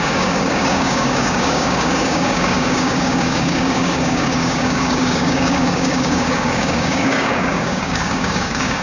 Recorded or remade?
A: remade